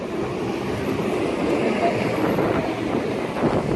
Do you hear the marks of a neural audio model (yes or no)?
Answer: no